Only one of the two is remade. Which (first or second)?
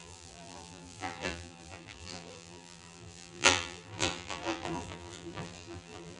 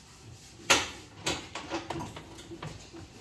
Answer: first